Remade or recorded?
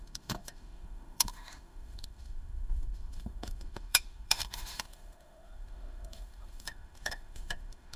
remade